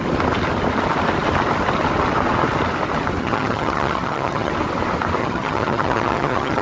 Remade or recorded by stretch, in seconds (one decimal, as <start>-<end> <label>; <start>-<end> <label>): 0.0-3.2 recorded; 3.2-4.5 remade; 4.5-5.2 recorded; 5.2-6.6 remade